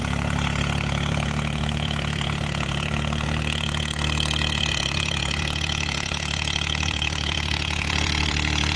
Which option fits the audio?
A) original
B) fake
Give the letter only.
B